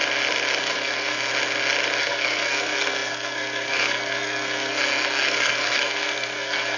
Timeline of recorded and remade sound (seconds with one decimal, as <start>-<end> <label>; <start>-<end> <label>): 0.0-0.6 recorded; 0.6-1.3 remade; 1.3-2.0 recorded; 2.0-6.8 remade

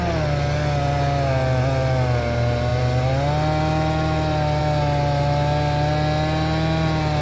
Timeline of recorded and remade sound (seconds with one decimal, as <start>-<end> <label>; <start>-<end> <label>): 0.0-7.2 recorded

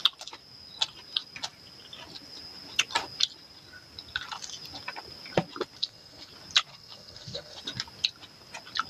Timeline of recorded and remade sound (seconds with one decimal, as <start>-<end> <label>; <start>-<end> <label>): 0.0-5.8 recorded; 5.8-6.3 remade; 6.3-6.7 recorded; 6.7-7.6 remade; 7.6-8.9 recorded

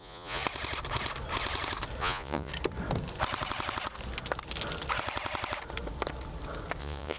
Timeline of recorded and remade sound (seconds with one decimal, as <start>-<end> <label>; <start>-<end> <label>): 0.0-0.4 remade; 0.4-2.0 recorded; 2.0-2.5 remade; 2.5-6.8 recorded; 6.8-7.2 remade

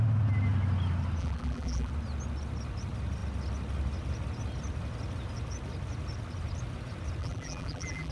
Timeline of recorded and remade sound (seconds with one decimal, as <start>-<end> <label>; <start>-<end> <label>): 0.0-1.2 recorded; 1.2-1.9 remade; 1.9-7.2 recorded; 7.2-8.1 remade